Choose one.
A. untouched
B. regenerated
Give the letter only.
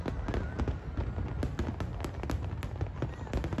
A